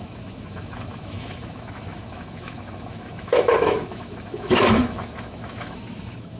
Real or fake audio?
fake